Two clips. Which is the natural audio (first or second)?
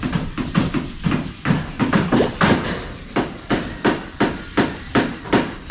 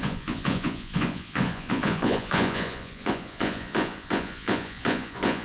first